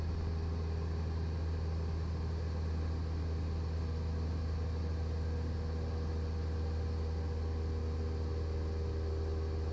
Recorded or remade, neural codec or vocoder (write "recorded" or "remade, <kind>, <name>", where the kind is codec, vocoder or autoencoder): recorded